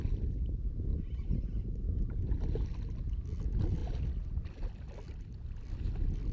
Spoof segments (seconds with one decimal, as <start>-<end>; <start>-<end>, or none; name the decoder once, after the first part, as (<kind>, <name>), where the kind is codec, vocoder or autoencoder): 0.9-2.3 (vocoder, BigVGAN v2)